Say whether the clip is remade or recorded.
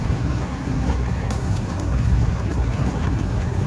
remade